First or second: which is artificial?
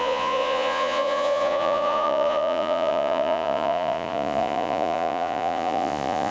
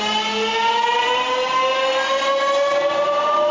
first